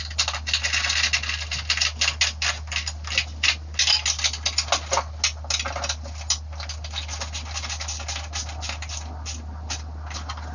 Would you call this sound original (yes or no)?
yes